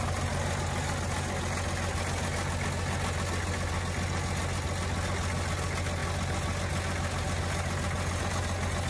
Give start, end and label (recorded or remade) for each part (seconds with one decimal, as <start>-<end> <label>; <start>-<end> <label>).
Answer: 0.0-8.9 recorded